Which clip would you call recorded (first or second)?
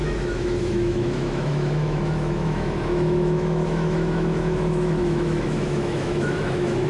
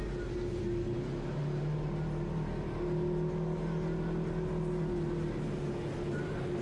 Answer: second